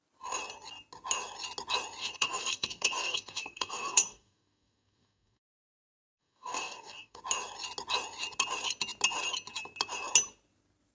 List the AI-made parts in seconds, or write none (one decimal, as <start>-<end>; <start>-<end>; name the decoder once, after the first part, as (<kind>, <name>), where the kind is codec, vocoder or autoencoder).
2.0-7.2 (codec, DAC)